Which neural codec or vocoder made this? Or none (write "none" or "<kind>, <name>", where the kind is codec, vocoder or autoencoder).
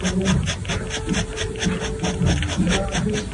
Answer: none